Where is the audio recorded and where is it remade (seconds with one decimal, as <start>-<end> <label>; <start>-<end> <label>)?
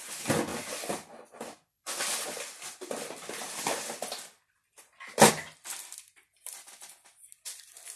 0.0-0.5 recorded; 0.5-5.3 remade; 5.3-8.0 recorded